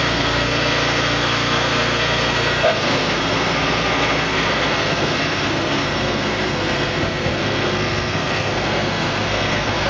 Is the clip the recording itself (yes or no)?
no